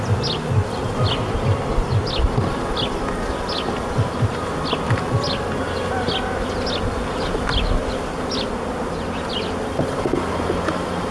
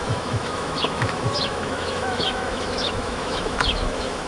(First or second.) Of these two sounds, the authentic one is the first